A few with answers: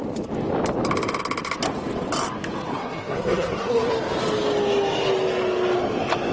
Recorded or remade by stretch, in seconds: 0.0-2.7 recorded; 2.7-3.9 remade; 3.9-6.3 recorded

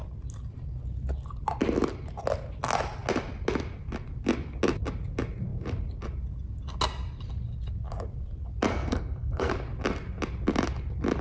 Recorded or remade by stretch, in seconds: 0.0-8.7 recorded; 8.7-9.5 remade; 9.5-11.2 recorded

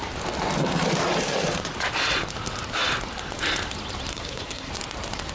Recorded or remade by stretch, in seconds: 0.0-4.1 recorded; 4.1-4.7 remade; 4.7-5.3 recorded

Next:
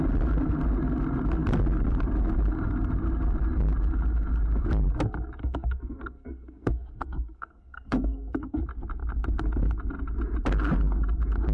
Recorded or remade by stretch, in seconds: 0.0-5.4 recorded; 5.4-8.6 remade; 8.6-11.5 recorded

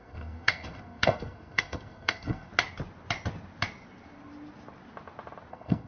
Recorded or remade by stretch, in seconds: 0.0-2.5 remade; 2.5-5.5 recorded; 5.5-5.9 remade

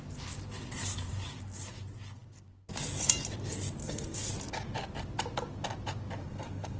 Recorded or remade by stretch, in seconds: 0.0-3.8 recorded; 3.8-4.3 remade; 4.3-6.2 recorded; 6.2-6.8 remade